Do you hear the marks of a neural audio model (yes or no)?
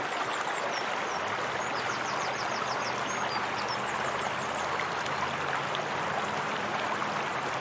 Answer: no